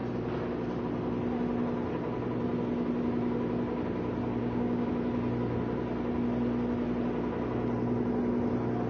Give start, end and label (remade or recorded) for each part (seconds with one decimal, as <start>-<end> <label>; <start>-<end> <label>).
0.0-4.4 recorded; 4.4-4.9 remade; 4.9-8.9 recorded